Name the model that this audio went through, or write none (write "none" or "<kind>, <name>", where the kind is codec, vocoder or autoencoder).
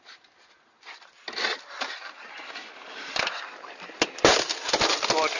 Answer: vocoder, BigVGAN v2